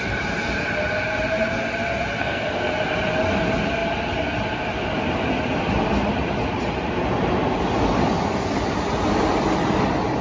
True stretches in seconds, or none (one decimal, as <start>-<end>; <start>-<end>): 0.0-2.2; 2.7-10.2